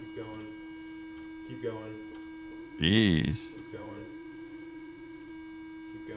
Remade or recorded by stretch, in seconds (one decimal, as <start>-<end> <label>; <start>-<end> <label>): 0.0-2.6 recorded; 2.6-5.3 remade; 5.3-6.2 recorded